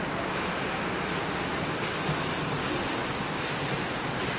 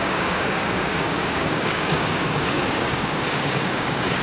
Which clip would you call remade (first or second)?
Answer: second